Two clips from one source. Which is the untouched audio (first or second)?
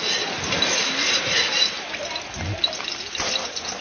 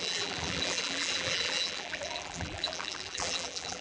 first